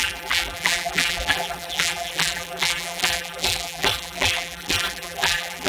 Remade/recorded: remade